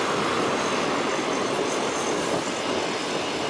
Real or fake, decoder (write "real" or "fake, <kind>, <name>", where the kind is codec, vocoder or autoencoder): real